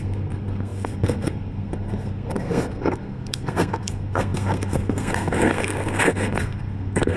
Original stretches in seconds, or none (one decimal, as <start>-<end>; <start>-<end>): none